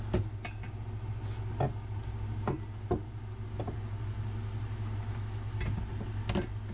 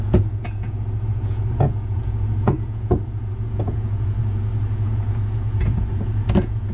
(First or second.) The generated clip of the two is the second